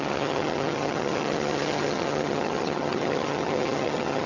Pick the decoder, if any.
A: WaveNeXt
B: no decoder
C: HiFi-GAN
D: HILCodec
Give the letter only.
C